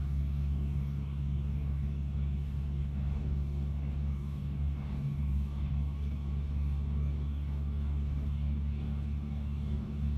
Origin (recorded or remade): remade